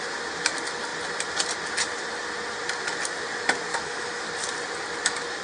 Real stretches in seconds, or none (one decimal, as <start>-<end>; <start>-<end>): 0.0-3.7; 4.3-5.4

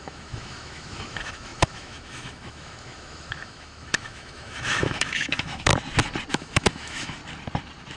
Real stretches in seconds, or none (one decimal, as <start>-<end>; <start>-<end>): 5.7-6.3; 7.2-8.0

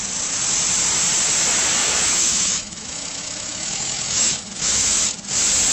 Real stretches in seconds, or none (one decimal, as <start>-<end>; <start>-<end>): 0.0-1.8; 5.0-5.7

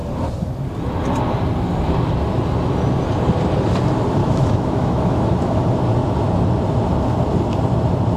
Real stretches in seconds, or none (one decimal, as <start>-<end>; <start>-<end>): 0.0-4.2; 5.6-8.2

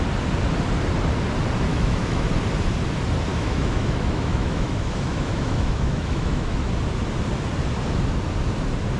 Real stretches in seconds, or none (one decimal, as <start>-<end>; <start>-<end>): 0.0-1.7; 2.3-3.3; 6.7-9.0